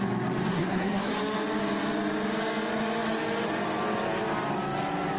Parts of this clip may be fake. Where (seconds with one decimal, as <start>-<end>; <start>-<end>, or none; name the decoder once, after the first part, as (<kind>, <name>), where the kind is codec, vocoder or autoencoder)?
0.5-1.1 (codec, SNAC)